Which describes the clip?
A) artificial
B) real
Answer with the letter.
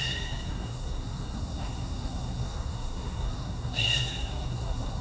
A